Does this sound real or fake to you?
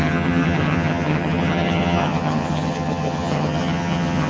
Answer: fake